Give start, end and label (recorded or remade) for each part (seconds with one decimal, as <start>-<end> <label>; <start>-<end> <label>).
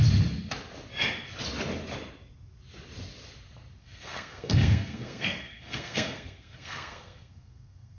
0.0-3.8 recorded; 3.8-8.0 remade